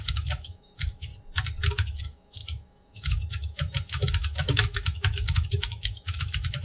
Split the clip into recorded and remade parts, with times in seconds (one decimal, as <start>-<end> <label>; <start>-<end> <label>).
0.0-1.1 remade; 1.1-1.7 recorded; 1.7-6.6 remade

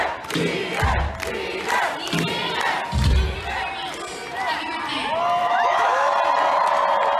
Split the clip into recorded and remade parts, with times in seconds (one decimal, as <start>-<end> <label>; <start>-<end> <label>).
0.0-5.4 recorded; 5.4-6.1 remade; 6.1-7.2 recorded